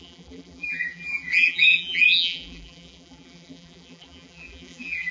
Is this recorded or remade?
remade